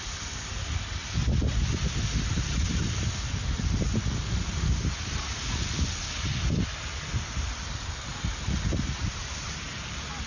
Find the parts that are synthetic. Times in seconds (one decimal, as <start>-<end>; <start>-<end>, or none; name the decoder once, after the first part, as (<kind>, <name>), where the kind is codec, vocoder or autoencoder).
none